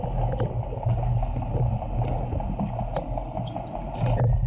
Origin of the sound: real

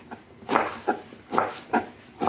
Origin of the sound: real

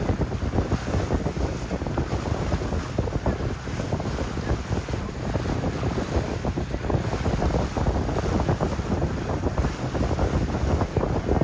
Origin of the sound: real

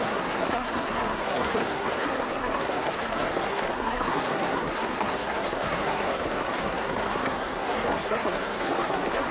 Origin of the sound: fake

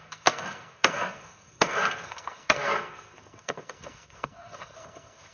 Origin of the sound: fake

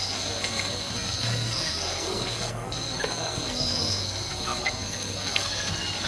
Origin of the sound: fake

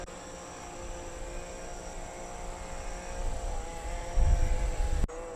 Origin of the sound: real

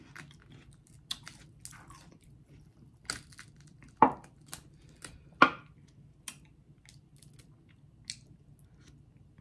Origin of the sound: real